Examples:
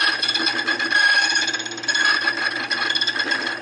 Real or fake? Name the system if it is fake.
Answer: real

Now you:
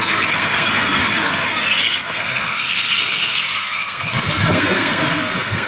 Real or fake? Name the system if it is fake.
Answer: fake, codec, SNAC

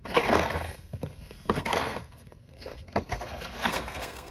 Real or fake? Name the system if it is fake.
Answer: fake, codec, SNAC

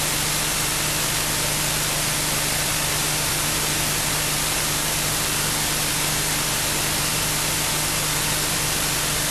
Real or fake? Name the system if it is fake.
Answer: real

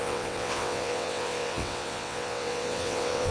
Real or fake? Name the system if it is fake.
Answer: fake, vocoder, WaveNeXt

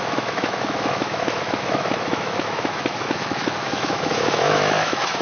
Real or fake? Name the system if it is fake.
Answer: fake, autoencoder, DAC-VAE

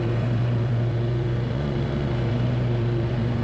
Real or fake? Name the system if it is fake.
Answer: fake, vocoder, Vocos